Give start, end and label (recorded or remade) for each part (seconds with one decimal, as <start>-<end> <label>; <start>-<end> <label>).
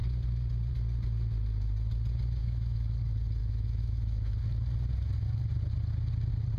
0.0-2.4 recorded; 2.4-3.0 remade; 3.0-3.4 recorded; 3.4-4.4 remade; 4.4-6.6 recorded